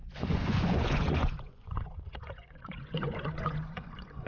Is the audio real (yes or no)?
no